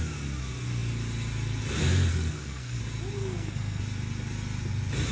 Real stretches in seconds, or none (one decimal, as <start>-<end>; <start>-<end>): 0.0-2.1; 2.8-3.2; 3.8-5.1